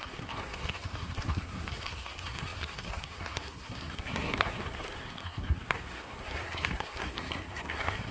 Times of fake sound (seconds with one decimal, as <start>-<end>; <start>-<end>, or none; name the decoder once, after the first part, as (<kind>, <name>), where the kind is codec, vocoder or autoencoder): 0.0-8.1 (codec, SNAC)